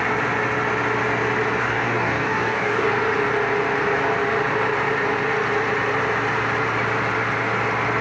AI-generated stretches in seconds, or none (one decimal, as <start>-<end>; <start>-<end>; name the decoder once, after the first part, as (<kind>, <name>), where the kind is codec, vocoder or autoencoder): 1.6-2.9 (codec, DAC)